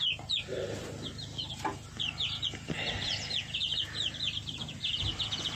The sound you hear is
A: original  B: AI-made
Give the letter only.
A